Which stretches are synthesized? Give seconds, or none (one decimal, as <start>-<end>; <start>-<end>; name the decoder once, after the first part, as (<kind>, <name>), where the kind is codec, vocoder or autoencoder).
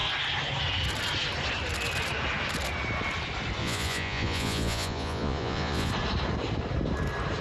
3.6-5.9 (vocoder, Vocos)